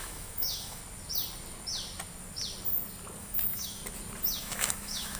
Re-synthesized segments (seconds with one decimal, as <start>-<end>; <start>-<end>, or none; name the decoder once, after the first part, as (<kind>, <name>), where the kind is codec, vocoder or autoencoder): 0.0-0.8 (autoencoder, DAC-VAE); 3.2-3.8; 4.4-5.2